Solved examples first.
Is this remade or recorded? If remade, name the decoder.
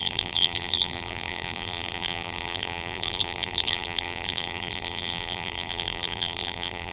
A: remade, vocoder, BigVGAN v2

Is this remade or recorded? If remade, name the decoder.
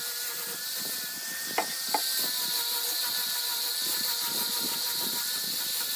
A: recorded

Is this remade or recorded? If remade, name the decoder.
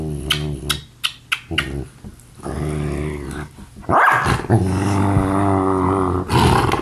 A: recorded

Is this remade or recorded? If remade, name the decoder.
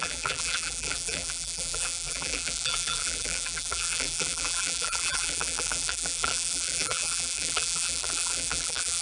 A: remade, vocoder, BigVGAN v2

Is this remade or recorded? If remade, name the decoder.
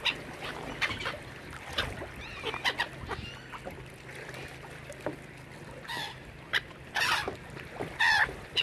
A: recorded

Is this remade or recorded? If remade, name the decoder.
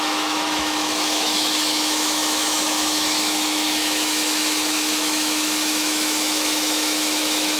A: remade, autoencoder, DAC-VAE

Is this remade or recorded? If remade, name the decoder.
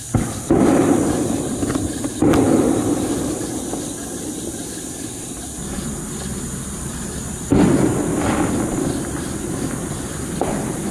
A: recorded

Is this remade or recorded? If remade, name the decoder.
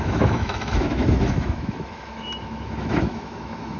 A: remade, autoencoder, DAC-VAE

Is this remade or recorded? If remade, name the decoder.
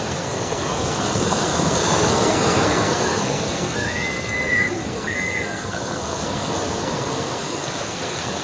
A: remade, codec, SNAC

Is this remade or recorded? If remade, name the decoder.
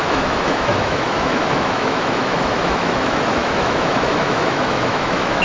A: remade, autoencoder, DAC-VAE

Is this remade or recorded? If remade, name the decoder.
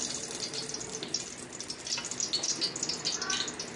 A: recorded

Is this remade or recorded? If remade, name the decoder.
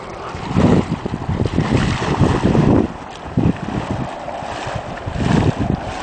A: remade, vocoder, BigVGAN v2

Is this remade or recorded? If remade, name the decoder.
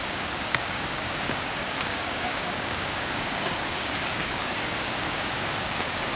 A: remade, codec, DAC